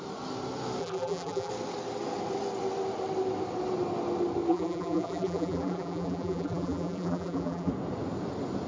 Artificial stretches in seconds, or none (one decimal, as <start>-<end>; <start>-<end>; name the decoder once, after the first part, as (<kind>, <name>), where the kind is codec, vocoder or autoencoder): 0.8-1.5 (vocoder, BigVGAN v2); 4.5-7.7